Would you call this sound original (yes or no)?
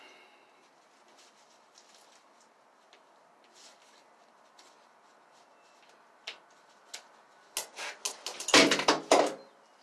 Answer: yes